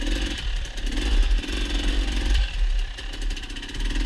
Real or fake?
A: fake